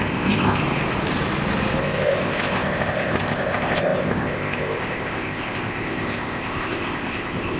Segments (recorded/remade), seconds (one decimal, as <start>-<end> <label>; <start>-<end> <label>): 0.0-0.6 remade; 0.6-1.8 recorded; 1.8-7.6 remade